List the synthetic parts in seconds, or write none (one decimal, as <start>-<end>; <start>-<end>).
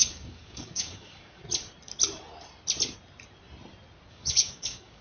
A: 0.0-1.4; 4.1-5.0